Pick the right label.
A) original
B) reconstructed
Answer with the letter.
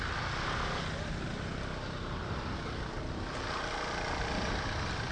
A